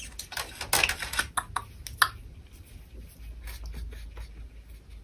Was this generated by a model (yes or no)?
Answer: no